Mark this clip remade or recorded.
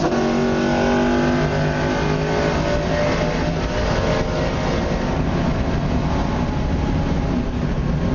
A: recorded